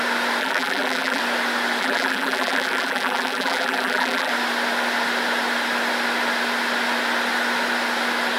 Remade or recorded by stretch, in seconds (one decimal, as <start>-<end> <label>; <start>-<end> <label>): 0.0-0.4 recorded; 0.4-1.2 remade; 1.2-1.8 recorded; 1.8-4.3 remade; 4.3-8.4 recorded